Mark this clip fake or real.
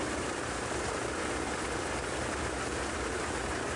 real